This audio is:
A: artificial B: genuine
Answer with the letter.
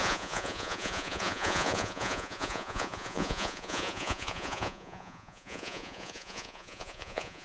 A